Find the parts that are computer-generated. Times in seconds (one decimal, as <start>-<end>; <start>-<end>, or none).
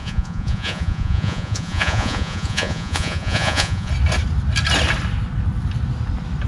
0.0-3.9